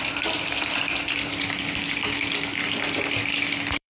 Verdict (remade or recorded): remade